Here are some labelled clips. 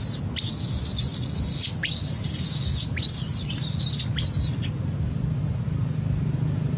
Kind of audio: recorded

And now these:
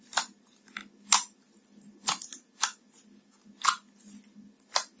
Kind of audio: recorded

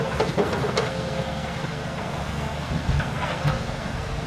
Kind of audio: remade